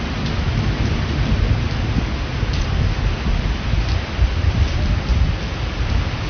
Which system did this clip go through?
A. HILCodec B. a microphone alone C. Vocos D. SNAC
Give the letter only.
B